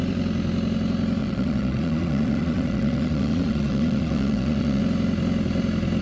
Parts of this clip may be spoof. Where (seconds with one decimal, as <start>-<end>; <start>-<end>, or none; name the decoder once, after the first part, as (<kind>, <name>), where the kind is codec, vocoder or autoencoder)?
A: 1.2-4.8 (vocoder, Vocos)